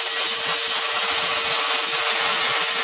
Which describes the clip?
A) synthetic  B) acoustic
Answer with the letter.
B